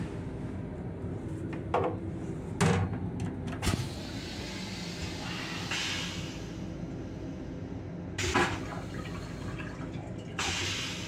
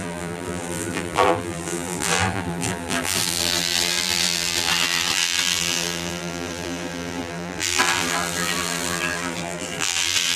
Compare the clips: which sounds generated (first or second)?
second